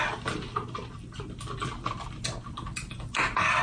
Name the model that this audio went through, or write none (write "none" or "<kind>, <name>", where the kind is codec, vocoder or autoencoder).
none